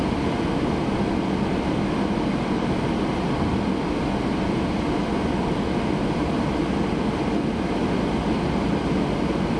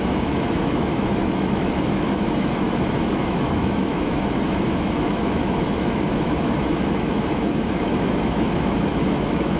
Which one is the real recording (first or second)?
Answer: first